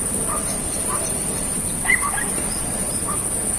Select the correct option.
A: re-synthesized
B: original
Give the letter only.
A